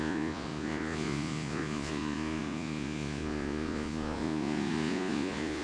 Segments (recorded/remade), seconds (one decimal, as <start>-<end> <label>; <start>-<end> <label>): 0.0-5.6 remade